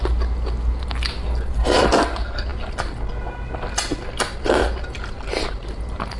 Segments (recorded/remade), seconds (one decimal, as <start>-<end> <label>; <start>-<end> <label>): 0.0-6.2 recorded